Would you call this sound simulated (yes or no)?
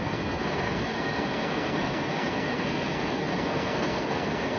yes